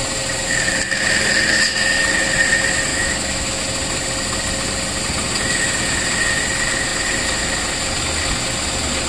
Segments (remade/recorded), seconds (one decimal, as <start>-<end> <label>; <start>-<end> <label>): 0.0-2.9 recorded; 2.9-3.6 remade; 3.6-9.1 recorded